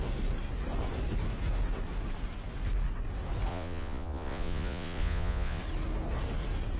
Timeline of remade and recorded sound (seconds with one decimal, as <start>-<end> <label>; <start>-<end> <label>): 0.0-3.5 recorded; 3.5-5.6 remade; 5.6-6.8 recorded